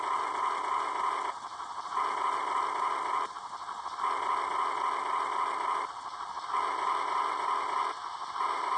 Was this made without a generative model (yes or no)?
yes